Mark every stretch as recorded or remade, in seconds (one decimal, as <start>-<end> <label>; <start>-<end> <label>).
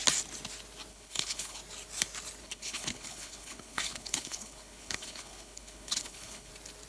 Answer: 0.0-0.9 recorded; 0.9-1.6 remade; 1.6-2.4 recorded; 2.4-6.5 remade; 6.5-6.9 recorded